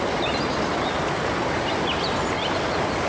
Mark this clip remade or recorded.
recorded